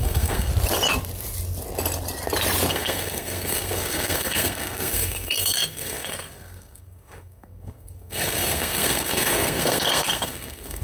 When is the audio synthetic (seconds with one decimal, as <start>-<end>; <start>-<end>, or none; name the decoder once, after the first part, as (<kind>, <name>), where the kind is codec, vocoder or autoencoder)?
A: 0.0-0.5 (codec, SNAC); 2.7-10.8